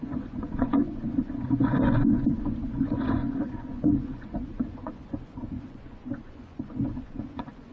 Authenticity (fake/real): fake